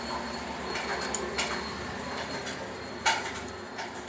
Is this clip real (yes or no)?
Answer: no